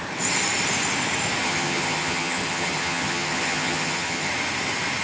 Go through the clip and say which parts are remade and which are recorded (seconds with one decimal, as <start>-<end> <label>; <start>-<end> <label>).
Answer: 0.0-1.4 recorded; 1.4-4.3 remade; 4.3-5.0 recorded